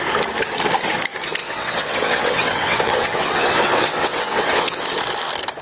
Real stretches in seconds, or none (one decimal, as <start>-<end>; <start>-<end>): 0.0-1.4; 4.8-5.6

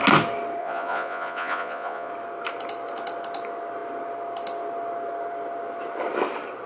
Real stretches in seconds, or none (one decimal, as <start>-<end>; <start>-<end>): 0.0-0.6; 2.1-6.7

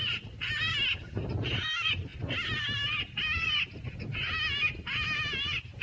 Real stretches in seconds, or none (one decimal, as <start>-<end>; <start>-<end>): 0.0-5.8

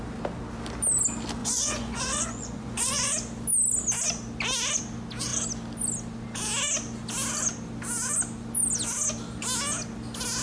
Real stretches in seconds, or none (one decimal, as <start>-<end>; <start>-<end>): 0.0-1.4; 3.1-10.4

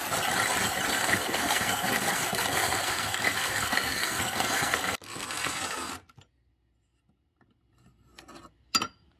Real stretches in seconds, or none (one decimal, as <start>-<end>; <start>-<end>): 0.0-0.9; 5.9-9.2